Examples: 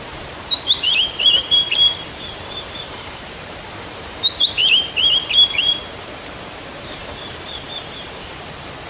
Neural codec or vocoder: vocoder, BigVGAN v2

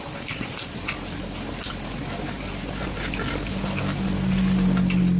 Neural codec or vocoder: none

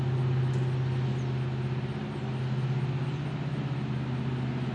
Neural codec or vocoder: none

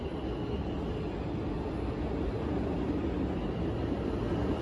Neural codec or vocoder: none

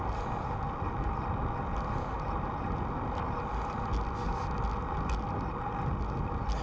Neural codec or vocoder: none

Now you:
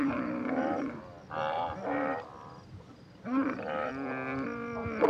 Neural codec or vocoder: vocoder, BigVGAN v2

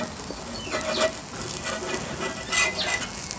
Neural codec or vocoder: none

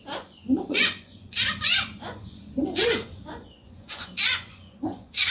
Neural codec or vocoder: vocoder, Vocos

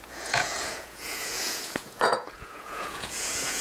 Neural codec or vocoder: vocoder, Vocos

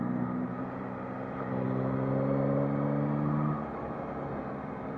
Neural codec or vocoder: none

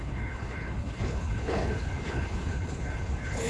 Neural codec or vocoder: codec, HILCodec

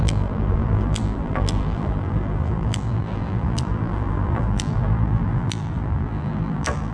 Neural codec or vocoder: vocoder, BigVGAN v2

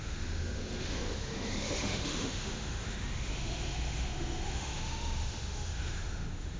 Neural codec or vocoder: autoencoder, DAC-VAE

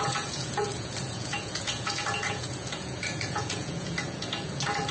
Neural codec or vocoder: vocoder, Vocos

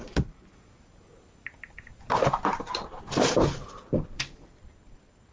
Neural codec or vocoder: none